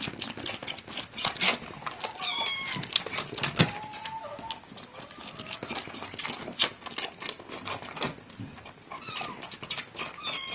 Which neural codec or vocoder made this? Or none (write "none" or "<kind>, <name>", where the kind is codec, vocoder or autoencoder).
none